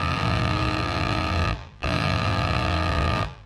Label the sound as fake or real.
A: fake